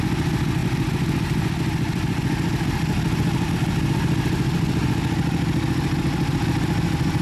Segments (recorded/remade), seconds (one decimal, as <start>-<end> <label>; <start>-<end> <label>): 0.0-7.2 recorded